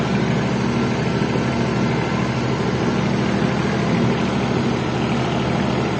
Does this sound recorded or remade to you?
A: recorded